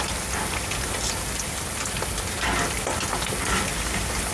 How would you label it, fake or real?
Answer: real